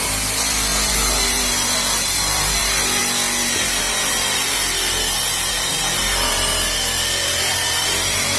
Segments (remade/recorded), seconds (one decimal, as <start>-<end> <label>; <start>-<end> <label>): 0.0-3.0 remade; 3.0-3.8 recorded; 3.8-8.4 remade